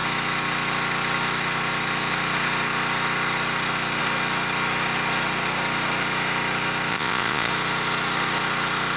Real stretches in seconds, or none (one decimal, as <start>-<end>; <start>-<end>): 0.0-6.9; 7.5-9.0